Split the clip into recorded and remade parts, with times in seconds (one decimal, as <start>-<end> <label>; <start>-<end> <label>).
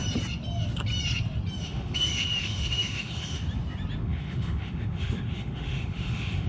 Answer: 0.0-1.6 recorded; 1.6-3.4 remade; 3.4-4.0 recorded; 4.0-6.5 remade